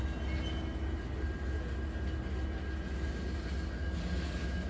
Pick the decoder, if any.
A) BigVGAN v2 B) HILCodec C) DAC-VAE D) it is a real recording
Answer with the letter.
D